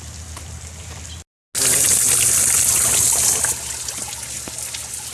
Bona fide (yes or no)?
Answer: yes